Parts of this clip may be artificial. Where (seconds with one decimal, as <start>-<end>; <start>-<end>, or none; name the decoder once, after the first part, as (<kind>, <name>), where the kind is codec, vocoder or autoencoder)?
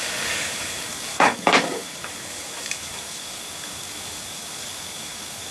0.0-5.5 (codec, DAC)